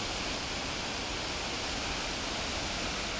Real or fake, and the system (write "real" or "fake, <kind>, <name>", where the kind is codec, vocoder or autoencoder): real